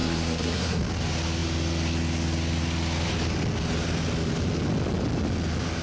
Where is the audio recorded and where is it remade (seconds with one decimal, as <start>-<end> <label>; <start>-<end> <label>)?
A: 0.0-0.8 remade; 0.8-5.8 recorded